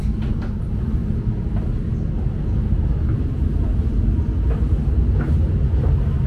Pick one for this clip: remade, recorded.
recorded